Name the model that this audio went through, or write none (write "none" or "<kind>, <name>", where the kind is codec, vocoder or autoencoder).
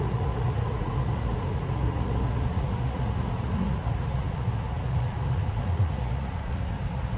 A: vocoder, Vocos